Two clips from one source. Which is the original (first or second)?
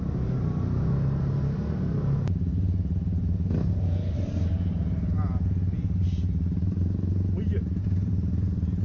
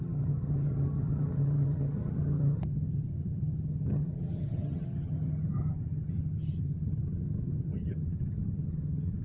first